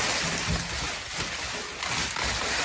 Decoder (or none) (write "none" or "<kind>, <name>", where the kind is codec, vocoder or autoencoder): none